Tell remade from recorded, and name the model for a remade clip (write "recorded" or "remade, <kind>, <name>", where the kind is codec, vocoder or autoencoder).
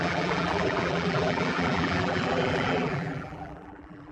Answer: remade, vocoder, BigVGAN v2